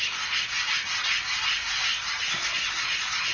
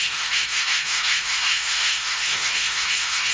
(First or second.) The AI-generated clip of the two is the second